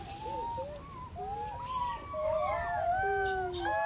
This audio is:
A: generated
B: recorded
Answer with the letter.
B